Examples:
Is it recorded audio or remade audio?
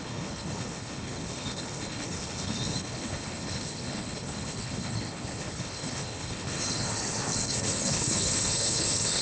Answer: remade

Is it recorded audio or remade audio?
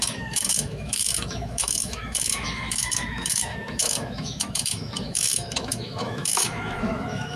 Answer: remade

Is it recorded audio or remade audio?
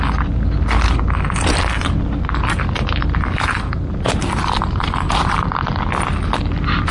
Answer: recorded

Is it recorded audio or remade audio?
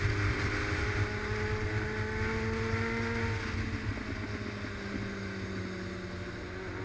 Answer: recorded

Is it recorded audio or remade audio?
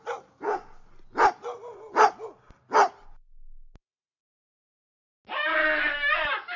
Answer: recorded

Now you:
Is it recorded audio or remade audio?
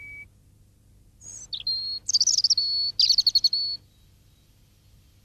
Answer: recorded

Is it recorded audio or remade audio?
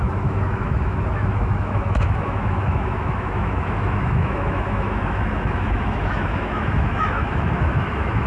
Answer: remade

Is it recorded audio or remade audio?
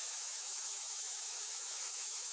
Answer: remade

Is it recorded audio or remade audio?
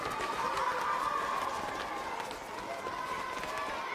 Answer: recorded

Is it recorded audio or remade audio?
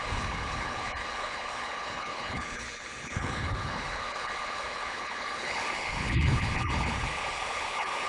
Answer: remade